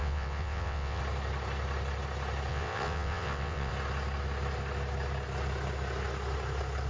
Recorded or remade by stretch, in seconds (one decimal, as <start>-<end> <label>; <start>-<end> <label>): 0.0-1.0 remade; 1.0-2.5 recorded; 2.5-3.7 remade; 3.7-6.9 recorded